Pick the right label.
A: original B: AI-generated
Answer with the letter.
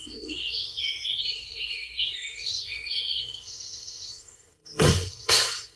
B